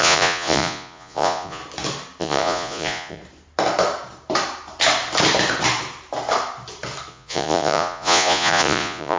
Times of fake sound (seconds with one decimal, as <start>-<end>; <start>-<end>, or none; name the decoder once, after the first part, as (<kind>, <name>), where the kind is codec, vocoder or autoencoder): 0.0-1.6 (vocoder, Vocos); 2.2-3.2; 7.1-9.2